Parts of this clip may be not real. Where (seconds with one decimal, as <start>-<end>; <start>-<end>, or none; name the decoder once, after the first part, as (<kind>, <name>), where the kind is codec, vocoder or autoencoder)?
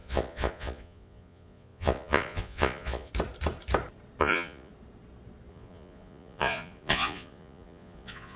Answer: 0.0-3.1 (vocoder, Vocos); 4.2-4.7; 5.5-8.4